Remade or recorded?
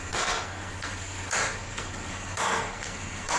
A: remade